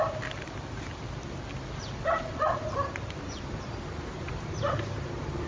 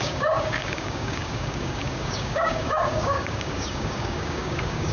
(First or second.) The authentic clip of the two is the first